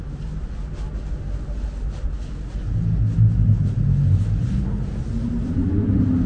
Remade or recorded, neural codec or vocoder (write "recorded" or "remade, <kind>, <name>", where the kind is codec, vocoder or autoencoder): recorded